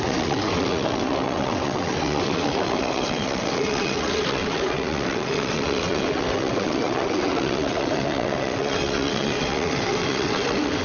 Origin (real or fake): fake